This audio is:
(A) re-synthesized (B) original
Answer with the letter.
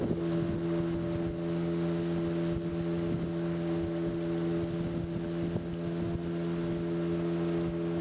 B